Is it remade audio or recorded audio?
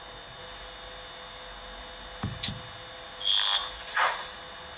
recorded